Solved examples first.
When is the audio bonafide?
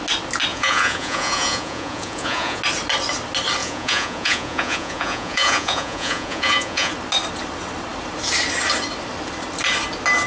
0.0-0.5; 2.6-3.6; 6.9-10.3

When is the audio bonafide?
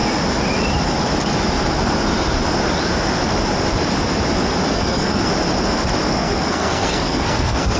0.0-4.7; 5.3-6.1